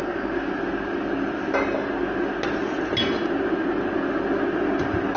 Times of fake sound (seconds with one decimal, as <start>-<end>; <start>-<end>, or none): none